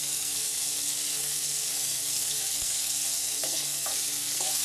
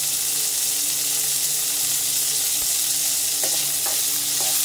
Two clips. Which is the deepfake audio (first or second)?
first